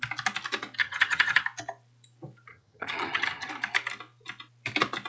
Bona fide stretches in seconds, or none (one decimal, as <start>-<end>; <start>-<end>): 0.0-0.8; 1.4-2.5; 3.5-5.1